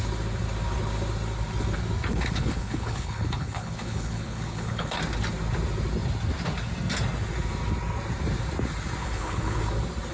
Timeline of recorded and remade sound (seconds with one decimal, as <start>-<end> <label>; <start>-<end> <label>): 0.0-2.1 recorded; 2.1-5.0 remade; 5.0-9.0 recorded; 9.0-9.6 remade; 9.6-10.1 recorded